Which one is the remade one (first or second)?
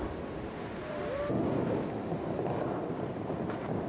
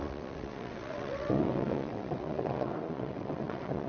second